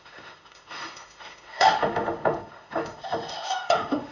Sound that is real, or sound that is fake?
fake